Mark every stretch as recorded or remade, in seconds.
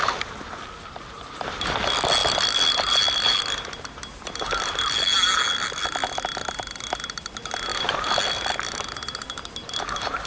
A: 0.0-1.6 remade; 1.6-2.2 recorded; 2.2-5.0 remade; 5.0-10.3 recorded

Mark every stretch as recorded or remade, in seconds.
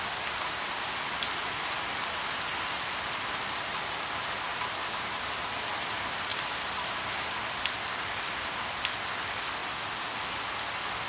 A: 0.0-4.5 recorded; 4.5-5.6 remade; 5.6-6.3 recorded; 6.3-8.3 remade; 8.3-11.1 recorded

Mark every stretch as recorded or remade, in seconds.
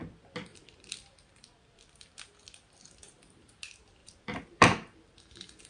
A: 0.0-0.5 recorded; 0.5-2.1 remade; 2.1-4.0 recorded; 4.0-5.7 remade